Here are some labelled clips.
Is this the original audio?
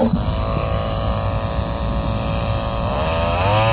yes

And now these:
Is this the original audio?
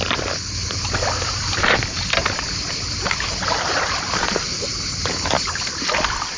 yes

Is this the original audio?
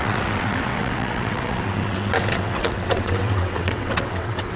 no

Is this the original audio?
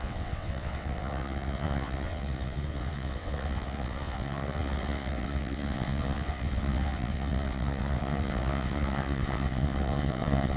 no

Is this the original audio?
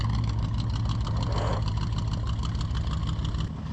yes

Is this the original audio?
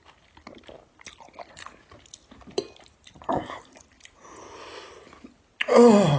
yes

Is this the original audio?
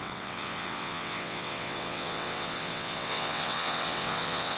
no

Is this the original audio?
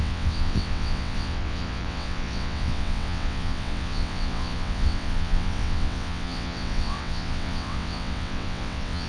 no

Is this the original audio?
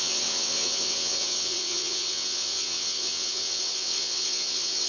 no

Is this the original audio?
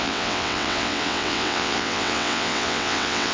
no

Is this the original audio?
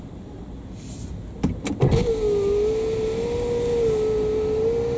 yes